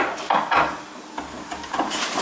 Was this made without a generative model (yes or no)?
yes